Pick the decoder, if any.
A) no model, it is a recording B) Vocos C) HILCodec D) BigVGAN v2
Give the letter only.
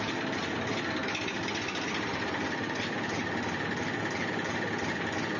A